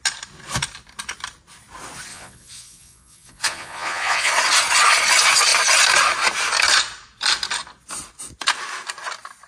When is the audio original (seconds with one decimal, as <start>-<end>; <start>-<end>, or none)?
0.0-2.1; 4.3-9.5